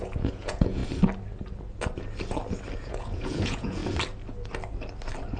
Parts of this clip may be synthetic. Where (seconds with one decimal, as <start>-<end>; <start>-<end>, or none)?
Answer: 0.0-0.8; 2.8-3.8